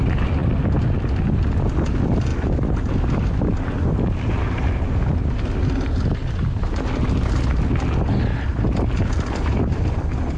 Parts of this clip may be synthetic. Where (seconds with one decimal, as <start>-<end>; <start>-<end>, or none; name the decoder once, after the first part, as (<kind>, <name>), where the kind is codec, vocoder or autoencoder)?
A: 8.3-10.4 (vocoder, BigVGAN v2)